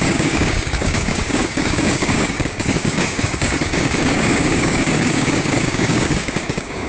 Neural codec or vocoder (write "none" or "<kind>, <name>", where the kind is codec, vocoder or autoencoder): codec, DAC